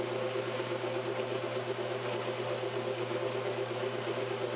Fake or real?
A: real